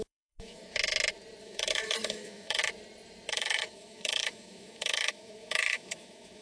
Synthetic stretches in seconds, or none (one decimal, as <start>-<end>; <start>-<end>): 0.0-0.7; 1.4-2.6; 3.3-6.4